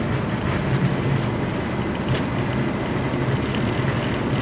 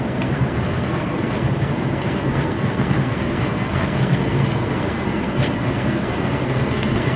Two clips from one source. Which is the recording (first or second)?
first